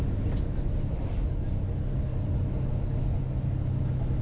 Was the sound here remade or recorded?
recorded